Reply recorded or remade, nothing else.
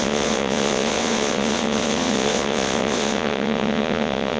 remade